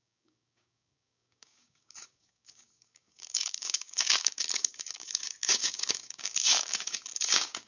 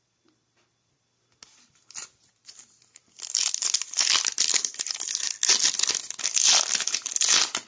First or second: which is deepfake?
first